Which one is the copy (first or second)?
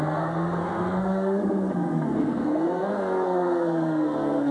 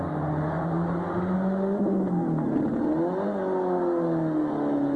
first